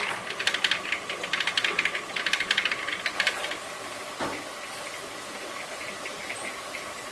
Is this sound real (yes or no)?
yes